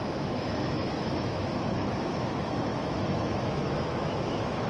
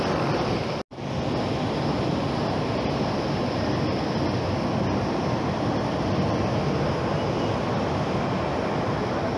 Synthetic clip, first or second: first